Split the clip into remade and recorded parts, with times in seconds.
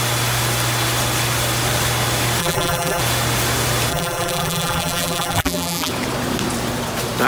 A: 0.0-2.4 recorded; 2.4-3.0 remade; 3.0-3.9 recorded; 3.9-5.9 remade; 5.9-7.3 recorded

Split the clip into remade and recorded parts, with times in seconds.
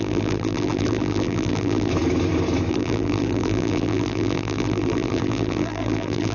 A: 0.0-1.9 remade; 1.9-2.7 recorded; 2.7-6.3 remade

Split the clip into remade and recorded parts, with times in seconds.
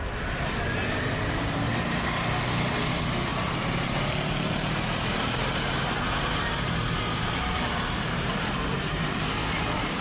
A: 0.0-10.0 remade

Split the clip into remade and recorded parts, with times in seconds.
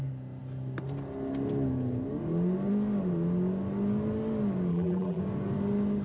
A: 0.0-4.7 recorded; 4.7-5.2 remade; 5.2-6.0 recorded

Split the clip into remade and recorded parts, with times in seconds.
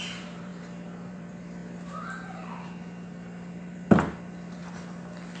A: 0.0-0.5 remade; 0.5-1.1 recorded; 1.1-1.6 remade; 1.6-3.5 recorded; 3.5-4.6 remade; 4.6-5.4 recorded